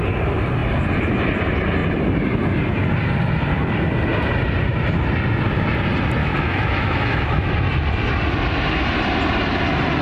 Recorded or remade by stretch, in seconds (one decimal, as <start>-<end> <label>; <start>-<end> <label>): 0.0-6.2 recorded; 6.2-7.5 remade; 7.5-10.0 recorded